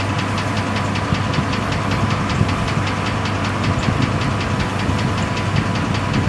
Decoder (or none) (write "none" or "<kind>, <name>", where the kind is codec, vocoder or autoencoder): none